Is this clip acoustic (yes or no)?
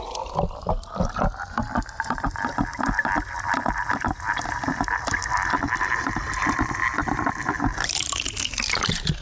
yes